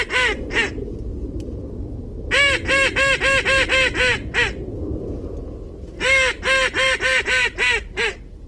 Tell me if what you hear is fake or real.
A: real